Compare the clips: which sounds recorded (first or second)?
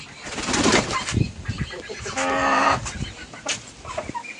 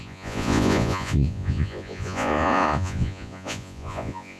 first